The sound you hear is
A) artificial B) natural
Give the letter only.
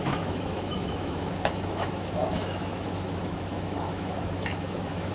A